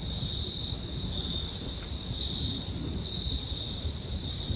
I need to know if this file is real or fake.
fake